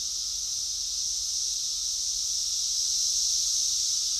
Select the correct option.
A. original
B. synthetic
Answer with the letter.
A